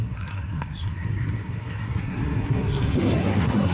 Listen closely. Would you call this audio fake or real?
fake